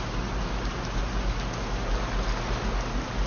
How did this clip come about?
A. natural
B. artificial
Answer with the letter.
A